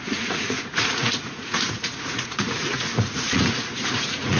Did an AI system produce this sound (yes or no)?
yes